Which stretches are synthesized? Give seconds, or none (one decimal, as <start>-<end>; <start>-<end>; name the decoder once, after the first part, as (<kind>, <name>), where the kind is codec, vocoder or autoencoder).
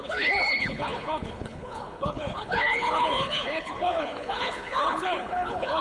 0.0-5.8 (codec, HILCodec)